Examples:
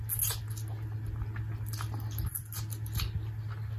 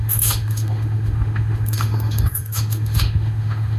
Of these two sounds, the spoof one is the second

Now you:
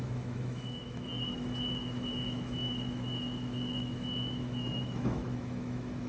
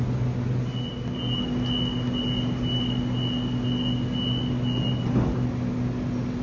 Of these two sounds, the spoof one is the first